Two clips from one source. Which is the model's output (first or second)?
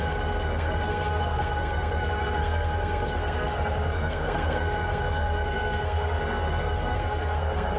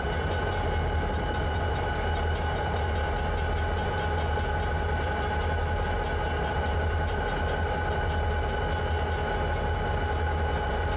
first